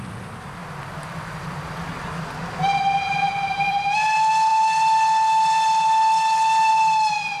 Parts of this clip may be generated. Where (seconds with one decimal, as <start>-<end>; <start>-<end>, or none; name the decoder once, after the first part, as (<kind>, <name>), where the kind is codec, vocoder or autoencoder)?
none